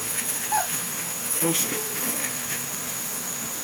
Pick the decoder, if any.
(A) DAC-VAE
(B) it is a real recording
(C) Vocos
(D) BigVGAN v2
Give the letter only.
A